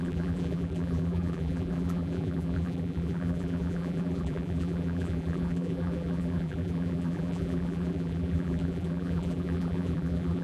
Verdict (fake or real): fake